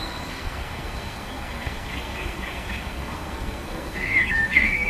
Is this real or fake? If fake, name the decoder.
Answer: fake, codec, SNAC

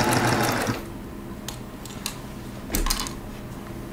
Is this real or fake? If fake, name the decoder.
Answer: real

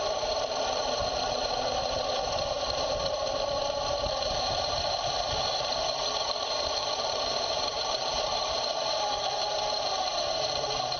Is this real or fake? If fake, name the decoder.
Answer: fake, vocoder, BigVGAN v2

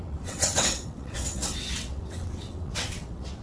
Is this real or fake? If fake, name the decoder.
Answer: fake, vocoder, WaveNeXt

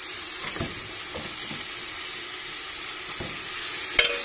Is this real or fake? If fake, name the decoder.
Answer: real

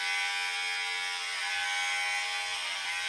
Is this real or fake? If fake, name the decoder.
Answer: real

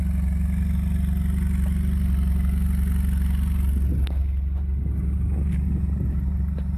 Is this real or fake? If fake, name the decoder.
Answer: real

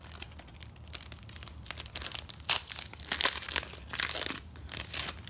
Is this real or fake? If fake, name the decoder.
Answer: real